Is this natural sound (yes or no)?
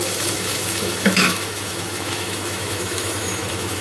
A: no